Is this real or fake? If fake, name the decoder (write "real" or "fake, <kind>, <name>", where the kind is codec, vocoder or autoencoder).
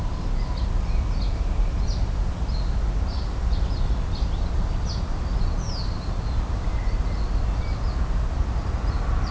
real